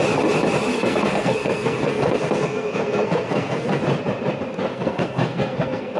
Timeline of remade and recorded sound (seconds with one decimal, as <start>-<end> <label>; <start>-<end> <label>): 0.0-0.7 recorded; 0.7-3.8 remade; 3.8-4.7 recorded; 4.7-6.0 remade

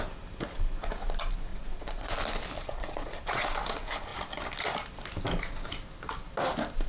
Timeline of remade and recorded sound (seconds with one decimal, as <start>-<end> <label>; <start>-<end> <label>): 0.0-1.5 recorded; 1.5-2.1 remade; 2.1-2.7 recorded; 2.7-3.4 remade; 3.4-6.9 recorded

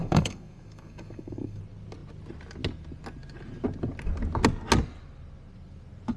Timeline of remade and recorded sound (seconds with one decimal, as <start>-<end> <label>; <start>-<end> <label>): 0.0-1.6 remade; 1.6-6.2 recorded

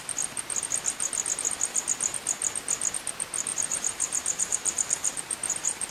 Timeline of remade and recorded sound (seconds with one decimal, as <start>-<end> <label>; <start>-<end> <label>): 0.0-3.5 recorded; 3.5-5.9 remade

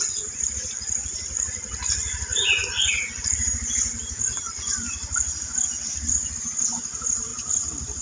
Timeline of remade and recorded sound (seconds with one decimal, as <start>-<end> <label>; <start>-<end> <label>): 0.0-8.0 recorded

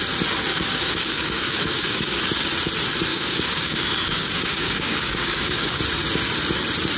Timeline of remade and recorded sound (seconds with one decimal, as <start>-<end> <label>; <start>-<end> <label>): 0.0-0.5 recorded; 0.5-2.2 remade; 2.2-3.1 recorded; 3.1-5.8 remade; 5.8-7.0 recorded

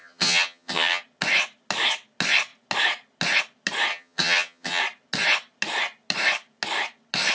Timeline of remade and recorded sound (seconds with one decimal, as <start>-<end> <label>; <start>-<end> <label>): 0.0-1.0 remade; 1.0-3.9 recorded; 3.9-4.8 remade; 4.8-7.3 recorded